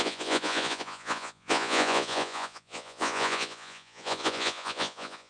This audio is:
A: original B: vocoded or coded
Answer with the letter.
B